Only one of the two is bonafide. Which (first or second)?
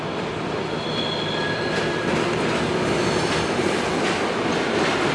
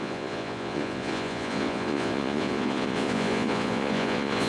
first